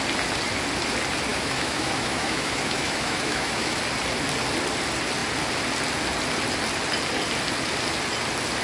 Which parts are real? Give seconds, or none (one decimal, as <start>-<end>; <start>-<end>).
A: 0.0-1.3; 3.8-8.6